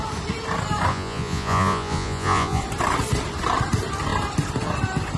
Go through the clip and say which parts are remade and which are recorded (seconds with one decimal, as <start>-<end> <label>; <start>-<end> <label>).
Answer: 0.0-0.9 recorded; 0.9-2.6 remade; 2.6-5.2 recorded